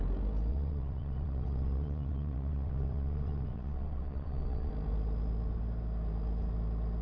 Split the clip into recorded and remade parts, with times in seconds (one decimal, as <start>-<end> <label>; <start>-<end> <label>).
0.0-0.5 recorded; 0.5-4.7 remade; 4.7-7.0 recorded